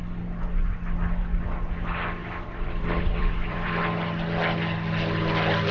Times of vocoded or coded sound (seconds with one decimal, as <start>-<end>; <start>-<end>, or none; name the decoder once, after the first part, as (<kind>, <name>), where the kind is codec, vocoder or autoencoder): 2.2-3.8 (vocoder, BigVGAN v2)